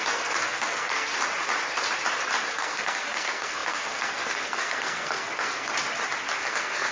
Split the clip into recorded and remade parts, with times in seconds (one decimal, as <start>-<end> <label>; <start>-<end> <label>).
0.0-1.1 remade; 1.1-2.5 recorded; 2.5-5.7 remade; 5.7-6.4 recorded; 6.4-6.9 remade